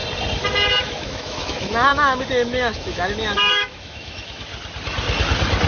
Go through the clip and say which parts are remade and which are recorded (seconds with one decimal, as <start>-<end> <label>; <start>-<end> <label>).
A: 0.0-0.8 recorded; 0.8-4.5 remade; 4.5-5.7 recorded